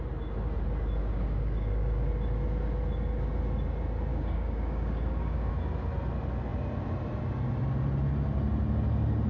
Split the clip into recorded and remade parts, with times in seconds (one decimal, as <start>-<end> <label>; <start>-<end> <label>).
0.0-1.0 recorded; 1.0-2.1 remade; 2.1-4.1 recorded; 4.1-5.5 remade; 5.5-9.3 recorded